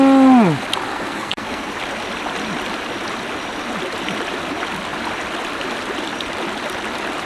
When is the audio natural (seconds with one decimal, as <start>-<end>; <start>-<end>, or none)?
0.0-0.9; 1.7-7.3